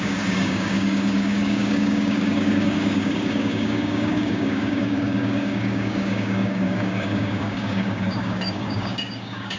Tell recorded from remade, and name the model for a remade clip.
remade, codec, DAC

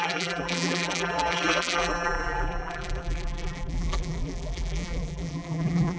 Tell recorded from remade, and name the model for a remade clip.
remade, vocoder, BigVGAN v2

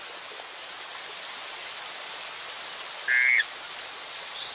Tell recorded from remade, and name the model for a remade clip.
recorded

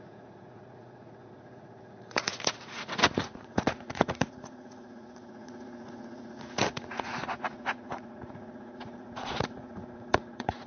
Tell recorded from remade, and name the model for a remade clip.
remade, vocoder, Vocos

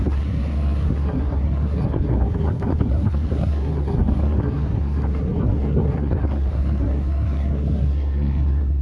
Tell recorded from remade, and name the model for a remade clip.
remade, codec, SNAC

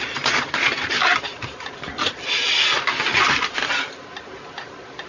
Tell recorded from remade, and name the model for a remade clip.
recorded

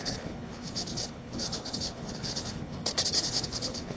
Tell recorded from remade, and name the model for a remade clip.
remade, codec, HILCodec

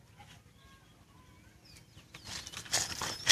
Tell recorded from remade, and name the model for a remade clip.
recorded